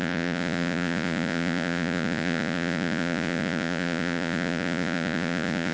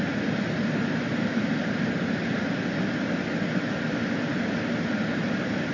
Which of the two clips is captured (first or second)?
second